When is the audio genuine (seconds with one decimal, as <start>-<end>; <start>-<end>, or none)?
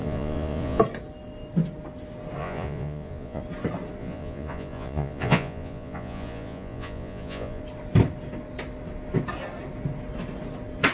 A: 0.8-2.4; 3.4-4.0; 7.6-10.9